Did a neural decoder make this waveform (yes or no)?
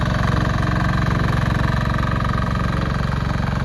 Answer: no